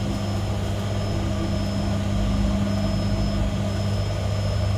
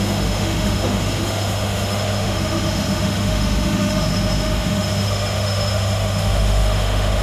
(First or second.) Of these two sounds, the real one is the first